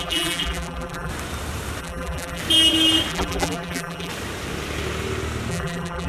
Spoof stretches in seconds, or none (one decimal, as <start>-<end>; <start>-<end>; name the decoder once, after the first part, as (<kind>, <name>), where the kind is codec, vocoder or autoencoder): 0.0-1.1 (vocoder, BigVGAN v2); 1.8-2.4; 3.1-4.1; 5.5-6.1